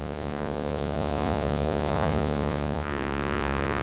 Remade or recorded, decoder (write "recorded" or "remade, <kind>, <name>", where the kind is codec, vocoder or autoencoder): remade, vocoder, Vocos